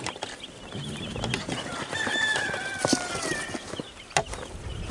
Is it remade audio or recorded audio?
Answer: recorded